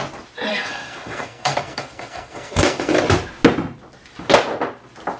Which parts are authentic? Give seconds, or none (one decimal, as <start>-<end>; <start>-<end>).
0.0-0.5; 3.0-5.2